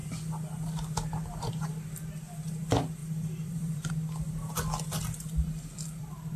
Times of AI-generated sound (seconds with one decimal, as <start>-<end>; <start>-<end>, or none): 3.0-3.9